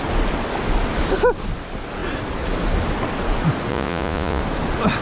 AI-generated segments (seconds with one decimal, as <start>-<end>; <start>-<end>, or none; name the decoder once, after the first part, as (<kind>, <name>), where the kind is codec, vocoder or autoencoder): 3.7-4.4 (vocoder, Vocos)